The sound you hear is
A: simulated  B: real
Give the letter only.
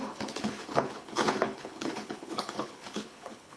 A